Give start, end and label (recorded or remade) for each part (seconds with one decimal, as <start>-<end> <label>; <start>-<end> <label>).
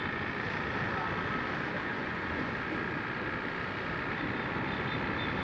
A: 0.0-1.9 recorded; 1.9-2.5 remade; 2.5-5.4 recorded